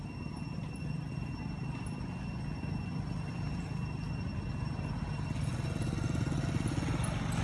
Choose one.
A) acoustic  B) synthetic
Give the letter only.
A